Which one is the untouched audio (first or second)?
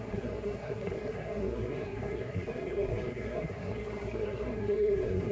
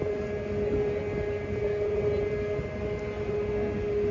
second